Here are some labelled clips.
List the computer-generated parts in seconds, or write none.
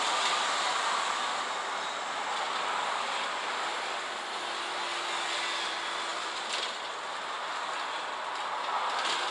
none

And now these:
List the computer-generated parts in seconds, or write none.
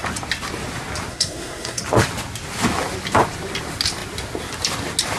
1.1-1.8 (codec, SNAC)